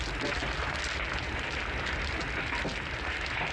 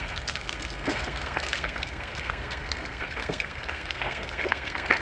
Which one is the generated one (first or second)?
second